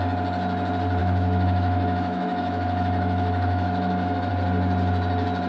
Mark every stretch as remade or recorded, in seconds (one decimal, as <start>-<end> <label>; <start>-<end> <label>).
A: 0.0-1.0 recorded; 1.0-4.3 remade; 4.3-5.5 recorded